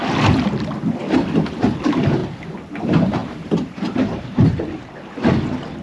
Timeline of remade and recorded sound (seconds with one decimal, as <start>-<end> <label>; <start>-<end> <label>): 0.0-3.2 recorded; 3.2-4.5 remade; 4.5-5.8 recorded